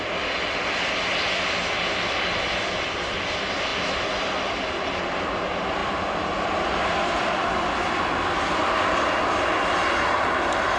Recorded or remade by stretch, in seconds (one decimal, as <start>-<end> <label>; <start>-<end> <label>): 0.0-5.8 recorded; 5.8-7.9 remade; 7.9-10.8 recorded